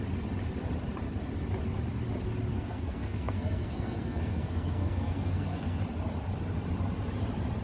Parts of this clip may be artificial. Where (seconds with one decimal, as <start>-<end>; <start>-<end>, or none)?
2.5-5.8